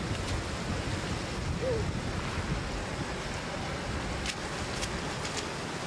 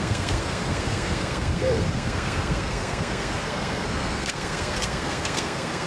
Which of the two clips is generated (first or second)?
second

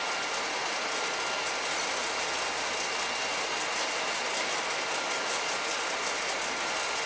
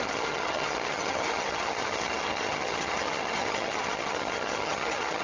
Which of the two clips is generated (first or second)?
second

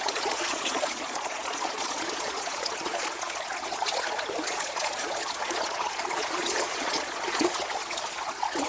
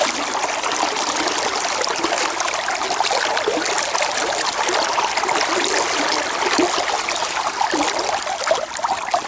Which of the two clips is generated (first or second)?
first